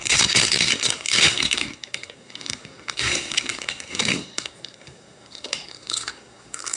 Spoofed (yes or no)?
yes